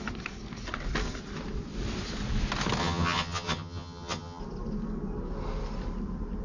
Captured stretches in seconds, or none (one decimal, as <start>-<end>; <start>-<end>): 0.0-2.8; 4.4-6.4